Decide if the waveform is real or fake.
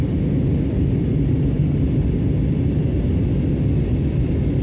real